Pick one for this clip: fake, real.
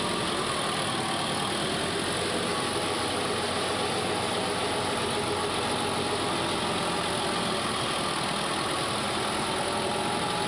real